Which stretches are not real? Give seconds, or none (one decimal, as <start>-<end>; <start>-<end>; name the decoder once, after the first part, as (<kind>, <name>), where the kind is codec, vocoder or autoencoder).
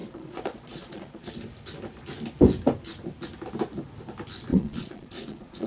0.0-1.3 (vocoder, Vocos); 4.5-5.7